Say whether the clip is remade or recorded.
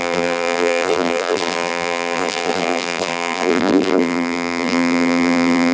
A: remade